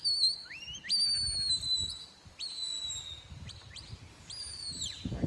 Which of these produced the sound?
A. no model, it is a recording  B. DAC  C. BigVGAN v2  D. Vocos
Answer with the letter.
A